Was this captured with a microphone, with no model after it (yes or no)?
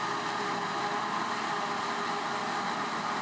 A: yes